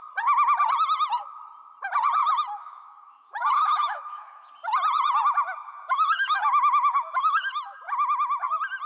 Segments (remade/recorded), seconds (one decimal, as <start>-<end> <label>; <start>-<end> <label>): 0.0-2.2 recorded; 2.2-4.5 remade; 4.5-5.6 recorded; 5.6-7.8 remade; 7.8-8.9 recorded